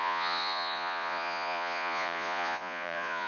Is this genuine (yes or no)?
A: no